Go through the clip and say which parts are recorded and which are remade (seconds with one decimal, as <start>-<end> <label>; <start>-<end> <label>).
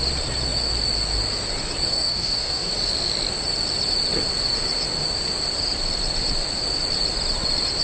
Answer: 0.0-1.9 recorded; 1.9-2.7 remade; 2.7-7.8 recorded